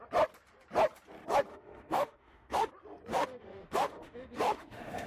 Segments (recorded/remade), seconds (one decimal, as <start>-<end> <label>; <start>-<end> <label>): 0.0-1.5 recorded; 1.5-2.7 remade; 2.7-3.1 recorded; 3.1-5.1 remade